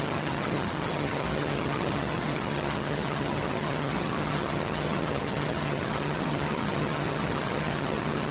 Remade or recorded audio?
remade